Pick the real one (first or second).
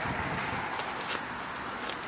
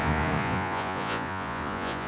first